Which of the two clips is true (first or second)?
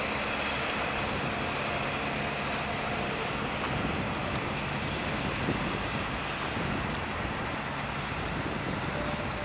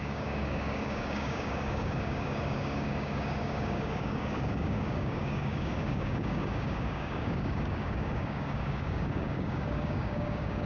first